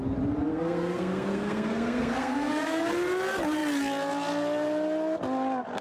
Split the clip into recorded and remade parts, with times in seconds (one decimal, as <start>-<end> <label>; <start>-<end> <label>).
0.0-0.5 recorded; 0.5-2.9 remade; 2.9-5.8 recorded